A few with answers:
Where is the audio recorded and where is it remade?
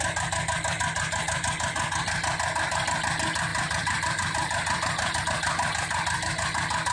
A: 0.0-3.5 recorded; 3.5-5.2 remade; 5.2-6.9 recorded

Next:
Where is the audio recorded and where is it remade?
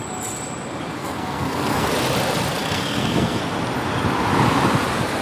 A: 0.0-1.0 recorded; 1.0-1.9 remade; 1.9-2.6 recorded; 2.6-3.4 remade; 3.4-5.2 recorded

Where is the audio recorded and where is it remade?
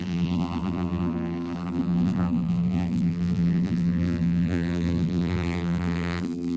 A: 0.0-6.6 remade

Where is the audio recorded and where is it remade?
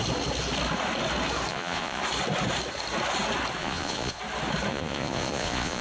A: 0.0-1.5 recorded; 1.5-2.0 remade; 2.0-3.6 recorded; 3.6-4.2 remade; 4.2-4.7 recorded; 4.7-5.8 remade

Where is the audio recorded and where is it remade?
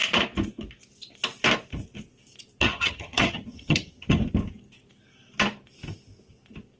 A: 0.0-2.6 recorded; 2.6-4.2 remade; 4.2-6.8 recorded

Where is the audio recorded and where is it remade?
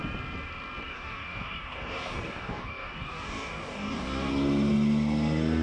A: 0.0-0.9 recorded; 0.9-4.3 remade; 4.3-5.6 recorded